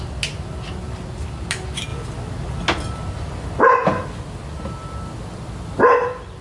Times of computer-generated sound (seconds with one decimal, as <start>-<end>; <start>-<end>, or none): none